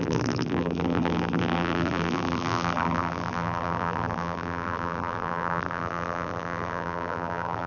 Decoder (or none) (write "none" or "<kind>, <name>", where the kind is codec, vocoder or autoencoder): vocoder, BigVGAN v2